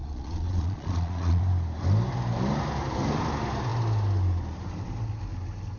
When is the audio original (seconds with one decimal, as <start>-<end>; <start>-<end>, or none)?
1.4-5.8

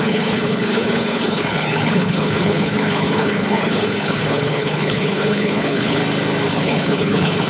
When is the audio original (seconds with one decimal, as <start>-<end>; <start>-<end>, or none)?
6.0-6.5

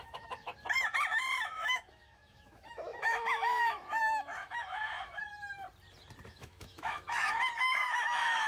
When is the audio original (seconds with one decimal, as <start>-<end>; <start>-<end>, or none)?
0.5-1.5; 5.2-6.3

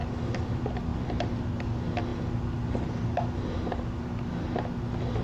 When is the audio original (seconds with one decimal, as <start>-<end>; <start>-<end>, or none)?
0.0-5.2

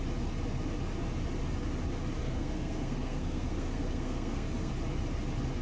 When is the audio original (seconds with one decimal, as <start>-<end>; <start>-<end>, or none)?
0.0-2.2; 4.7-5.6

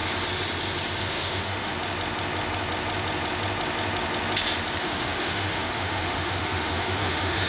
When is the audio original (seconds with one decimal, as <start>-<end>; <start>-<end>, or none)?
0.0-1.1; 1.7-4.8

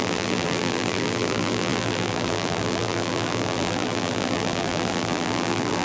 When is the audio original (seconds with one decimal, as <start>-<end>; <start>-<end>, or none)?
none

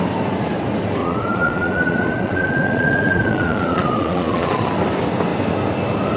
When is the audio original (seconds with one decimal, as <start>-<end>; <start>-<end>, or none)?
0.0-1.0; 4.7-6.2